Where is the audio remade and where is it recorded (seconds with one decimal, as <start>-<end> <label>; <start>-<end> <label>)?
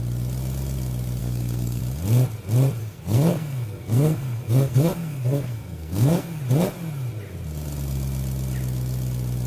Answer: 0.0-1.2 recorded; 1.2-1.8 remade; 1.8-2.8 recorded; 2.8-6.4 remade; 6.4-9.5 recorded